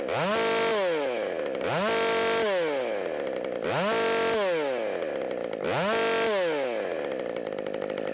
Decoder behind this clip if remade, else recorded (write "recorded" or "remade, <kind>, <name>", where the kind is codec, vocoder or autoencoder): recorded